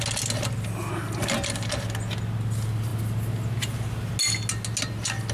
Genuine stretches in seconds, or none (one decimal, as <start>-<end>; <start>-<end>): 0.0-5.3